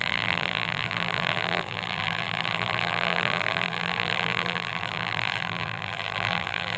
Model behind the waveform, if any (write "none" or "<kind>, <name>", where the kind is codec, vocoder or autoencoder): vocoder, BigVGAN v2